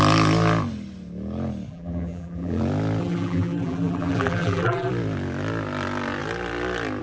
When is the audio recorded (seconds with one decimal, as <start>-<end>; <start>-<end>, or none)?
0.0-1.7; 2.6-3.0; 4.9-7.0